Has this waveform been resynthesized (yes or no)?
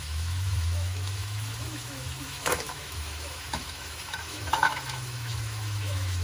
yes